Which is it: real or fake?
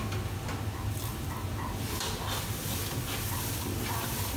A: real